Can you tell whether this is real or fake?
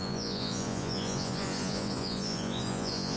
fake